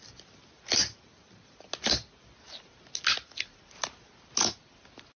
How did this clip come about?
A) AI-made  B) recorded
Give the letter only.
B